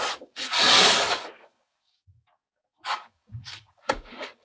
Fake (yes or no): yes